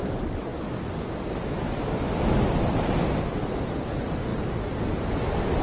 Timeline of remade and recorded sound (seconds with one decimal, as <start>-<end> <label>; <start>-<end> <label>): 0.0-5.6 recorded